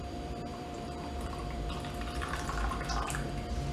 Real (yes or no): no